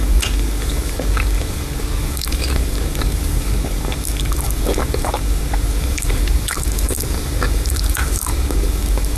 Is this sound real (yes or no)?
no